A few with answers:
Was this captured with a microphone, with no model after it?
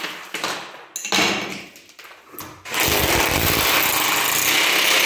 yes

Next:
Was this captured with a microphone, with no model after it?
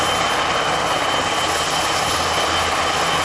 yes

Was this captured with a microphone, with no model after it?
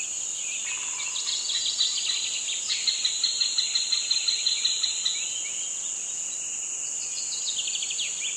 yes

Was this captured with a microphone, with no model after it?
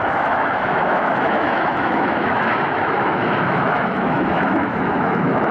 no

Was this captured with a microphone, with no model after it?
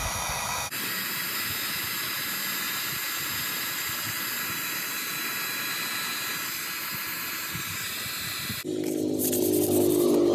yes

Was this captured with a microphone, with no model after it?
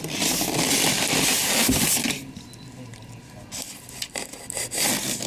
yes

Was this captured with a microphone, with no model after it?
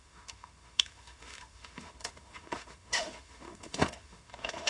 no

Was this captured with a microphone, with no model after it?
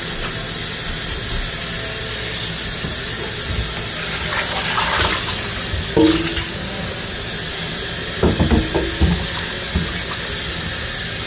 yes